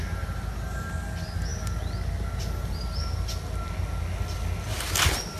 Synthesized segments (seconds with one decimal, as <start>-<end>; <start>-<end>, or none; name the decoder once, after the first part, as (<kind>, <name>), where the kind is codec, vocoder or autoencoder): none